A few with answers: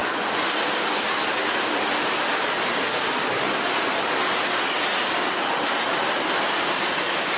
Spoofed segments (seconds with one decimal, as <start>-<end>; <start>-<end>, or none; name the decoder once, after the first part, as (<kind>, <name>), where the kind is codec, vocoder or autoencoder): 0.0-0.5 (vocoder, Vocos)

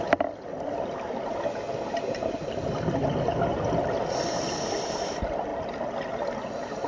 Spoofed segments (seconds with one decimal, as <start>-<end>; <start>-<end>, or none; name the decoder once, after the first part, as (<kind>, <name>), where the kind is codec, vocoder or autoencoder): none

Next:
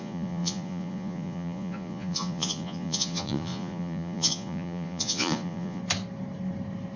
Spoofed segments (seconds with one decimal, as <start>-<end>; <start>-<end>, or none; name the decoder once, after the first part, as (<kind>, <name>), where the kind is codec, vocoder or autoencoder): 0.0-5.8 (vocoder, Vocos)